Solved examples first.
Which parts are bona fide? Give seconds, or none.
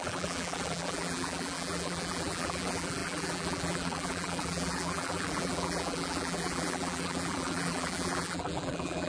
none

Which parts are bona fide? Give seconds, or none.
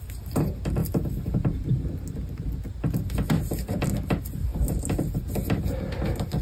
0.0-6.4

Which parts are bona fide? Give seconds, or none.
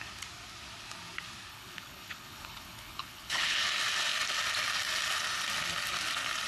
0.0-1.5; 3.6-6.5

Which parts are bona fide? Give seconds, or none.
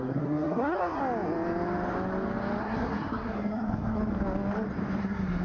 1.0-2.6; 4.0-5.0